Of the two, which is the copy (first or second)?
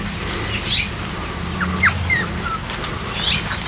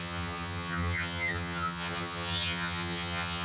second